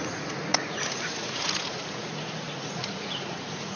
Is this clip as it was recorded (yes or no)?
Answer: no